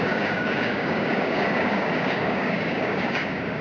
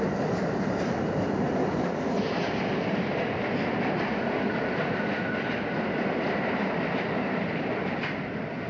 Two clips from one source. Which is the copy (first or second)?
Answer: first